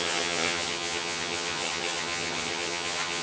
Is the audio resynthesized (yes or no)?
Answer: yes